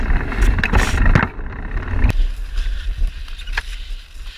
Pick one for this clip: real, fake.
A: real